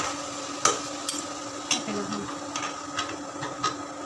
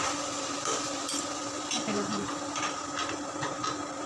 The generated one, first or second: second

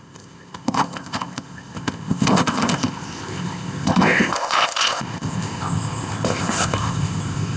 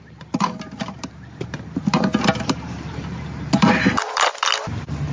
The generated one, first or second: first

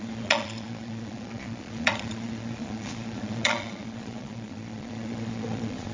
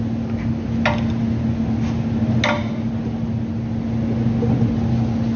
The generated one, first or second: first